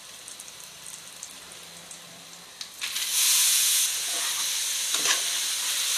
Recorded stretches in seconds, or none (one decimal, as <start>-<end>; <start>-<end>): 0.0-3.1; 4.2-6.0